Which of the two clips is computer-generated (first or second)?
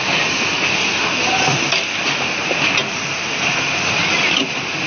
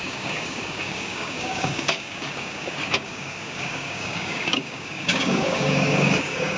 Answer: second